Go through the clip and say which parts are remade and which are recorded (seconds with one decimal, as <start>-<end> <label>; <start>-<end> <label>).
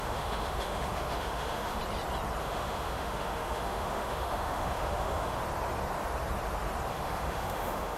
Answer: 0.0-1.8 remade; 1.8-2.4 recorded; 2.4-5.4 remade; 5.4-6.9 recorded; 6.9-8.0 remade